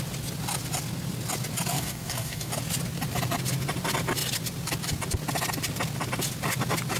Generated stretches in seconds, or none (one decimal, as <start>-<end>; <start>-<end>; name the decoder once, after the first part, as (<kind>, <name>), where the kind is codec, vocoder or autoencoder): 1.7-2.5 (codec, DAC)